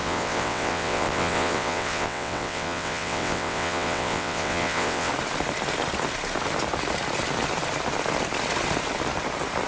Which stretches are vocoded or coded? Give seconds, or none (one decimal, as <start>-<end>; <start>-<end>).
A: 0.0-5.1